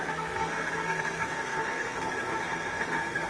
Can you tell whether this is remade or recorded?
remade